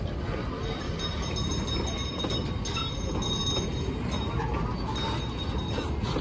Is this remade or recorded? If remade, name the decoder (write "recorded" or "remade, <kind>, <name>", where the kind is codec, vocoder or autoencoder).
recorded